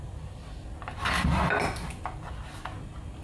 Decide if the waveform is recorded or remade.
recorded